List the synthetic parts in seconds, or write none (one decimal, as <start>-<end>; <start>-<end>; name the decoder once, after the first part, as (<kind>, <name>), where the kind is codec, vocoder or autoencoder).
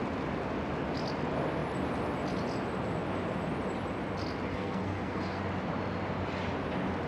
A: 4.5-5.4 (codec, SNAC)